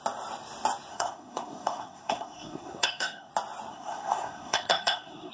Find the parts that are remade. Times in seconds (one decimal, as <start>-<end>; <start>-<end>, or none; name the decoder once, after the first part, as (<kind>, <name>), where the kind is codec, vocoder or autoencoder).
0.9-3.3 (codec, SNAC); 3.7-5.3

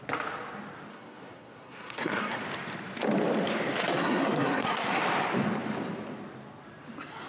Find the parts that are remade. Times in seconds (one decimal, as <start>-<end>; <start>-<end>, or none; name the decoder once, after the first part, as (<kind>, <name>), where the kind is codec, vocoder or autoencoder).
0.9-2.4 (codec, SNAC); 3.9-5.0

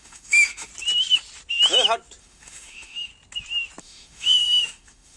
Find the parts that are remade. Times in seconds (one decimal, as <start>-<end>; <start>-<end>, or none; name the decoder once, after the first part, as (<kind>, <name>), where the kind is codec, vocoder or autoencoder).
0.0-0.7 (autoencoder, DAC-VAE); 2.2-3.1; 3.8-5.2

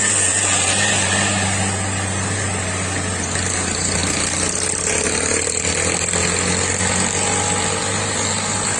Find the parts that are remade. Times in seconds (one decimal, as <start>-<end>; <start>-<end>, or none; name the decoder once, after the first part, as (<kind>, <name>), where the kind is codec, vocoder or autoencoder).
none

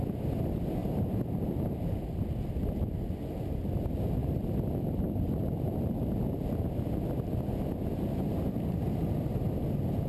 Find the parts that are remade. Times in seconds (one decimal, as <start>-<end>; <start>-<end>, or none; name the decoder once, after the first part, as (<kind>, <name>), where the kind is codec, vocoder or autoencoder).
none

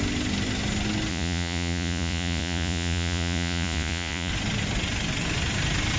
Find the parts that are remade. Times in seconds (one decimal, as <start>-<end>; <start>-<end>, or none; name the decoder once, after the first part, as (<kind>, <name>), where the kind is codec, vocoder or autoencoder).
1.1-4.3 (vocoder, Vocos)

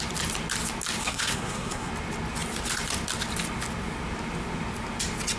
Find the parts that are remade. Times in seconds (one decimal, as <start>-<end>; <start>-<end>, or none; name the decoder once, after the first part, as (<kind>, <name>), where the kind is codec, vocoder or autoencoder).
1.0-1.9 (codec, SNAC)

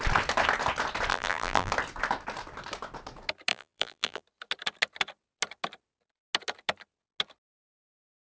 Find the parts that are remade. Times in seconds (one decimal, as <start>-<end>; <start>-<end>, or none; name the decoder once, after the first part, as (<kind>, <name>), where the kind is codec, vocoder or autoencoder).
1.1-1.7 (vocoder, BigVGAN v2); 3.5-4.2